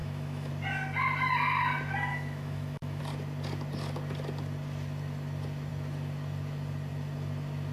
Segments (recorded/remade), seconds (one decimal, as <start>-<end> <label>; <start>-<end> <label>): 0.0-0.5 remade; 0.5-2.1 recorded; 2.1-3.0 remade; 3.0-7.7 recorded